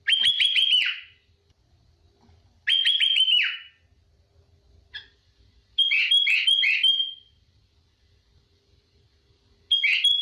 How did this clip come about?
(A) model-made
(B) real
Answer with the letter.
B